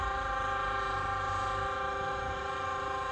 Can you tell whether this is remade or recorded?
remade